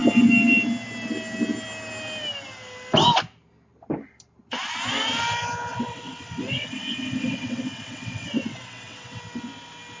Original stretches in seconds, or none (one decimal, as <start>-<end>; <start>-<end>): 0.0-5.7; 9.2-10.0

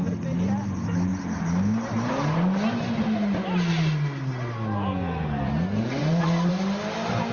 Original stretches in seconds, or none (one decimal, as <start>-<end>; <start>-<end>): 0.0-7.3

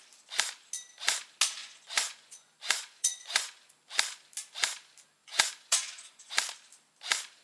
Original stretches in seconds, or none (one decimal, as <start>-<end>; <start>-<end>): 0.0-1.6; 3.7-5.2; 6.3-7.4

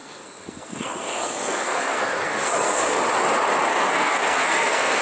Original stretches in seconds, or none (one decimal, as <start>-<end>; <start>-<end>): 3.0-3.7

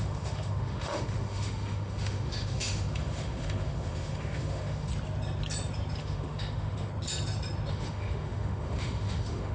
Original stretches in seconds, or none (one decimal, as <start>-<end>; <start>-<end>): 4.9-6.0; 6.9-7.7

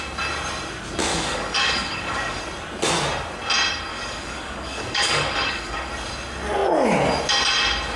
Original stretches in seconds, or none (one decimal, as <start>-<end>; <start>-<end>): 0.0-1.1; 2.4-3.9; 5.9-8.0